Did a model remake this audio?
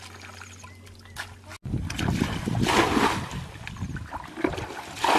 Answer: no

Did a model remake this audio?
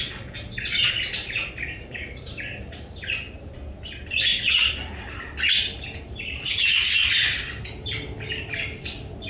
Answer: no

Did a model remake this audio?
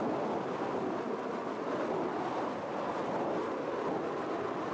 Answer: no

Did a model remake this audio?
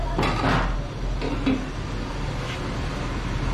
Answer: no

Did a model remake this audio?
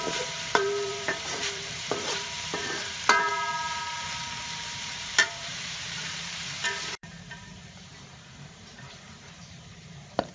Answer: yes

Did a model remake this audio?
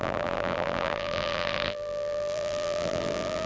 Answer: yes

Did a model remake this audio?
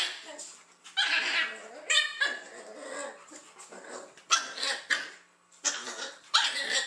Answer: no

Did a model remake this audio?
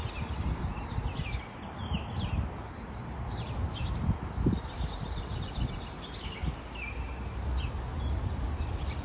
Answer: no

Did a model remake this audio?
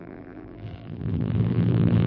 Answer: yes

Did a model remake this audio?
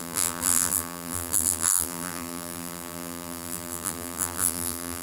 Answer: yes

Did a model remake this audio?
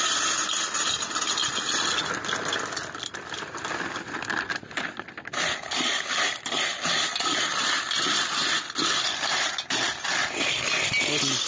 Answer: no